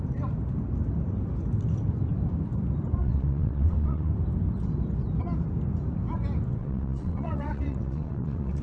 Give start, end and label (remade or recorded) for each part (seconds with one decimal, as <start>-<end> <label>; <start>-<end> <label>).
0.0-3.0 recorded; 3.0-4.1 remade; 4.1-6.6 recorded; 6.6-8.6 remade